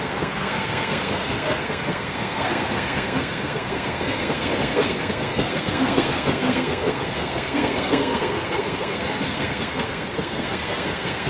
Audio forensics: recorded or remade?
remade